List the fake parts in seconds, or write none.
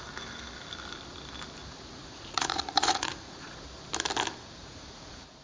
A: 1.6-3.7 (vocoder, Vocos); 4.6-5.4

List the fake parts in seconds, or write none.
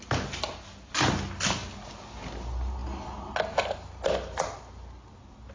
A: none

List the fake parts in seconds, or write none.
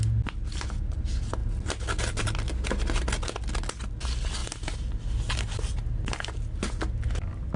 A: none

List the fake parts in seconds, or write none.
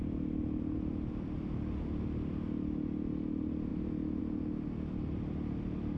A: none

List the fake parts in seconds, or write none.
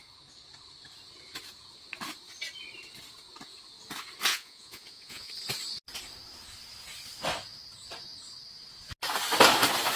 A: 4.3-5.3 (vocoder, Vocos)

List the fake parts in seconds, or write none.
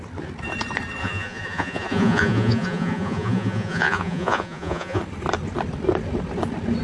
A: 1.0-5.0 (vocoder, Vocos)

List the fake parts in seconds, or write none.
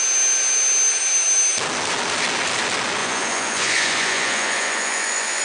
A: 3.0-5.4 (vocoder, Vocos)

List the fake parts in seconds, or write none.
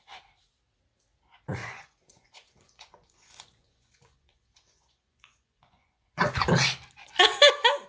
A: 1.6-6.3 (vocoder, Vocos)